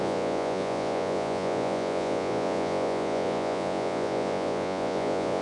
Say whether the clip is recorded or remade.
remade